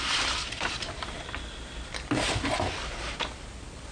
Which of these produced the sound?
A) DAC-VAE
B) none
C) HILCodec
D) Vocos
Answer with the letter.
B